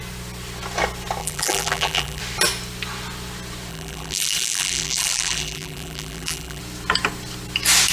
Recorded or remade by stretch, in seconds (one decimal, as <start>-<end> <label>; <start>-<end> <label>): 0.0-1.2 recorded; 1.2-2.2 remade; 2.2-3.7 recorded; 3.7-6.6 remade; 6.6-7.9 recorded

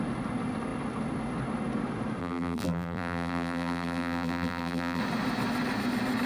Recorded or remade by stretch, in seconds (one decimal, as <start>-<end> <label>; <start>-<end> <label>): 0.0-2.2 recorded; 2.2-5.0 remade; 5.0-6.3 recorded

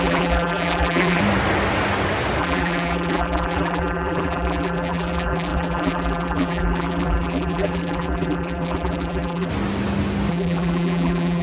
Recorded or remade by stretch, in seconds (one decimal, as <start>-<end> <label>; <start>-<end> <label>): 0.0-1.2 remade; 1.2-2.4 recorded; 2.4-9.5 remade; 9.5-10.3 recorded; 10.3-11.4 remade